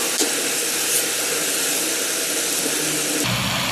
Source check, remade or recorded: recorded